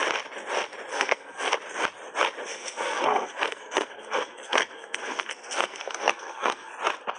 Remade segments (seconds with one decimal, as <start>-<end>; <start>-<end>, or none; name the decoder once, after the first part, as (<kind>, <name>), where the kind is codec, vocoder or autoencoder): 0.9-1.5 (codec, SNAC); 2.5-6.7